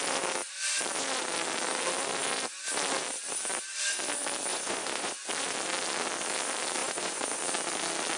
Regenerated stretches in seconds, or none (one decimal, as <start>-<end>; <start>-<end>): 4.5-5.3; 6.8-7.4